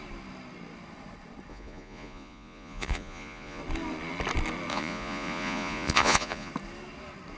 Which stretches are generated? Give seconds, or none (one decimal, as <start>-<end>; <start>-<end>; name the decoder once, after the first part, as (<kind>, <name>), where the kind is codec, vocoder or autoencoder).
1.5-3.6 (vocoder, Vocos); 4.7-6.5